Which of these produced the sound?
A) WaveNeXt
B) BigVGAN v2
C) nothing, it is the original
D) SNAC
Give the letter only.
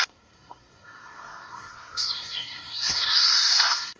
D